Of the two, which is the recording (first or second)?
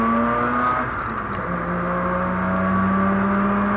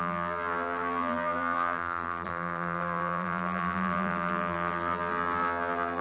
first